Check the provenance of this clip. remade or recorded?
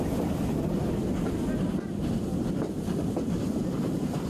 recorded